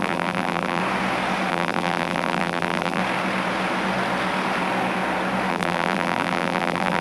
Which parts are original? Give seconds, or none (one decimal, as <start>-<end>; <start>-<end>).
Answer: 0.8-1.5; 3.0-5.5